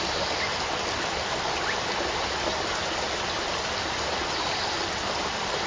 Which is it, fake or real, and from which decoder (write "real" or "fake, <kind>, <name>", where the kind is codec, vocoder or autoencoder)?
real